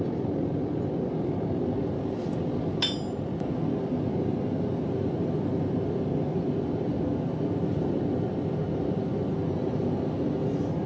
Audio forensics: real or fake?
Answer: real